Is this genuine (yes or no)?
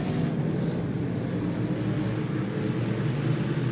yes